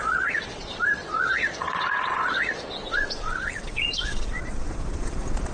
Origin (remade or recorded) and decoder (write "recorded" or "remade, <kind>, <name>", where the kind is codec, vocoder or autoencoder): remade, vocoder, Vocos